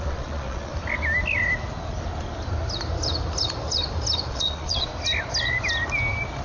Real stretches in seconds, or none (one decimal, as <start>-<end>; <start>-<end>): 0.7-4.3; 4.9-6.4